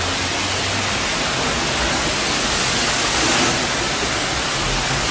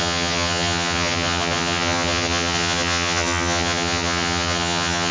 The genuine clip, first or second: first